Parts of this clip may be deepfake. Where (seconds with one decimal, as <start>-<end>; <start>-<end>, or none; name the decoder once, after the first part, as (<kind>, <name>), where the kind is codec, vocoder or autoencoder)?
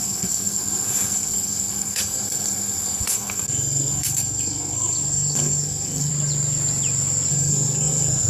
0.0-6.1 (codec, SNAC); 7.3-8.3